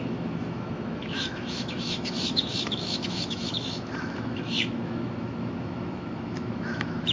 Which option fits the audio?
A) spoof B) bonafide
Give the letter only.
A